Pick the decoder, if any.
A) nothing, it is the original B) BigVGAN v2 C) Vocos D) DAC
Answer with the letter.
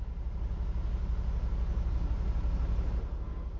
A